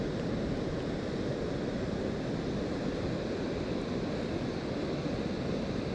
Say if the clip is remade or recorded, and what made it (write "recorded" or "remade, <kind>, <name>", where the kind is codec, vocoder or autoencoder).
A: recorded